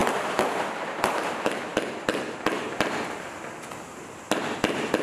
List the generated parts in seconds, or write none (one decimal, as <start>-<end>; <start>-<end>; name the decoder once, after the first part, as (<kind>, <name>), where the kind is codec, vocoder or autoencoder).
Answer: 0.0-1.1 (vocoder, BigVGAN v2)